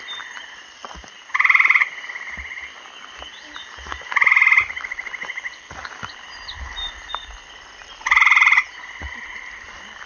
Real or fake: real